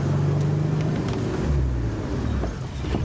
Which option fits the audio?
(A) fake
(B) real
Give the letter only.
B